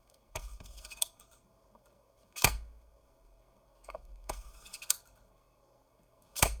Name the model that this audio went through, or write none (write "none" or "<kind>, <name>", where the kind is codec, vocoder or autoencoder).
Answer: codec, SNAC